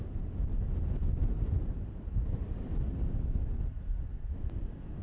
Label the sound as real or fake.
real